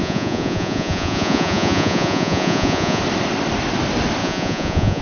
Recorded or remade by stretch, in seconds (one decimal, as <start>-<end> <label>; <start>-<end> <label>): 0.0-3.0 remade; 3.0-4.2 recorded; 4.2-5.0 remade